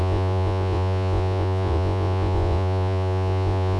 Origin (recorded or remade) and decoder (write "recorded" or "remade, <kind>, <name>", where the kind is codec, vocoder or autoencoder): remade, vocoder, Vocos